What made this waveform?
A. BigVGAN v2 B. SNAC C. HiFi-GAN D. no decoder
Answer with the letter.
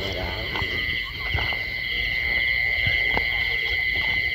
D